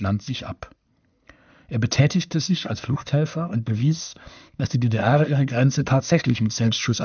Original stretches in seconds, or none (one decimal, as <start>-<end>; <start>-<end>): 0.4-2.0